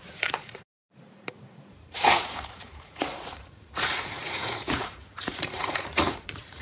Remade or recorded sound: remade